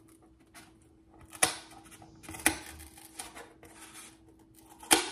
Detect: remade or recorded recorded